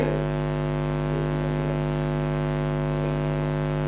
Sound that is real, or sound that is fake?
real